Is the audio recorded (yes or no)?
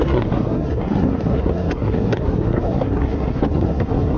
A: no